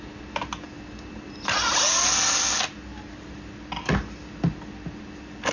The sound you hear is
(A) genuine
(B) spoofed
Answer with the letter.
A